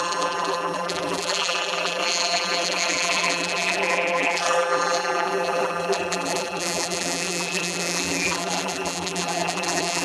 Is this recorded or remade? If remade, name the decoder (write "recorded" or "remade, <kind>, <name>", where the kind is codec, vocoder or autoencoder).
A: remade, vocoder, BigVGAN v2